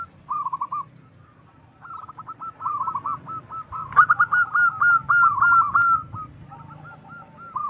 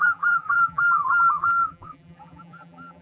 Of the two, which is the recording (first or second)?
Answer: first